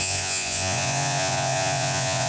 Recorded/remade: remade